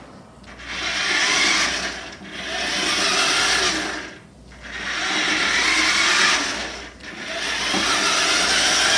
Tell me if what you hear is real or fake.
real